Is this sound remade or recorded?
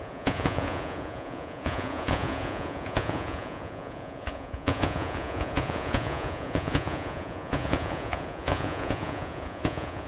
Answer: remade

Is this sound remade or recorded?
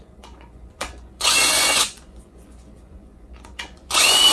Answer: remade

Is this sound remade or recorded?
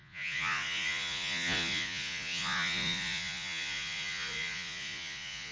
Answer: remade